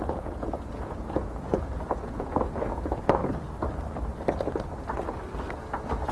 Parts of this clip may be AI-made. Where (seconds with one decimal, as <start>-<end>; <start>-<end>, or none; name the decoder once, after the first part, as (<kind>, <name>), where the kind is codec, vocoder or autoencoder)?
0.0-3.2 (vocoder, Vocos)